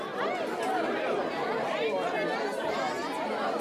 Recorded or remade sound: recorded